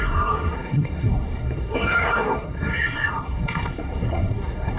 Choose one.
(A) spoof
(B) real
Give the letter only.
A